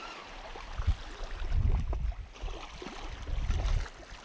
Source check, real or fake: real